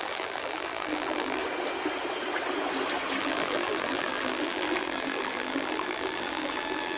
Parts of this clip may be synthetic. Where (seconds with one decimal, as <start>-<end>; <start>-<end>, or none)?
0.0-1.4; 3.2-7.0